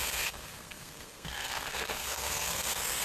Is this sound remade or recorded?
remade